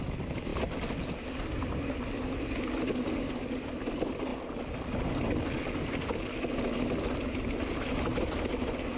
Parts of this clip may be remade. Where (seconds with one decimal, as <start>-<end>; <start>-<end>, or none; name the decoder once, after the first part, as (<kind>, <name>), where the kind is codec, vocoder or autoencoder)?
none

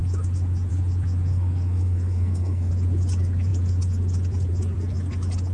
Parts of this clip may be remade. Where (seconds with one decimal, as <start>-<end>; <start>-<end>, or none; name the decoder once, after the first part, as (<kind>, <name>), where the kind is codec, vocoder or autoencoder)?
1.3-2.7 (codec, SNAC)